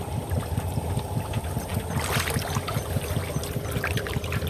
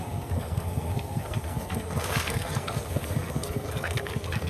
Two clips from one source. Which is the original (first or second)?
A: first